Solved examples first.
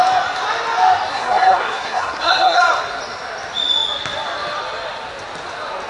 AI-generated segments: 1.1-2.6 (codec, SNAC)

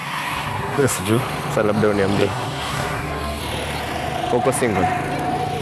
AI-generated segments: 0.0-1.2 (codec, SNAC); 2.2-3.4

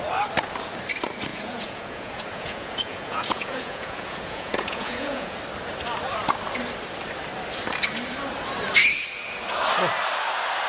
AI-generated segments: 1.3-5.4 (vocoder, Vocos)

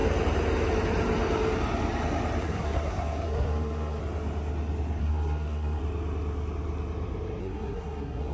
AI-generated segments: 2.4-4.0 (codec, SNAC); 5.0-5.8; 7.4-8.3